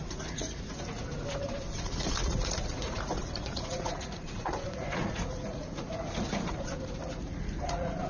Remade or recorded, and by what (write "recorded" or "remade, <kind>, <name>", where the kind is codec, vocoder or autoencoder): remade, vocoder, Vocos